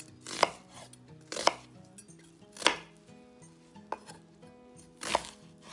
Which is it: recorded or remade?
recorded